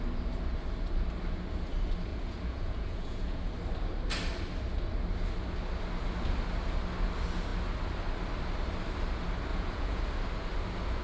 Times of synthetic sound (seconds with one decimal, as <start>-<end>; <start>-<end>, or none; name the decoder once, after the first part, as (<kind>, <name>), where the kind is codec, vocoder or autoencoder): 2.1-3.4 (vocoder, Vocos); 9.5-10.0